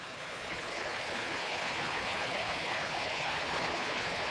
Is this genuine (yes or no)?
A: no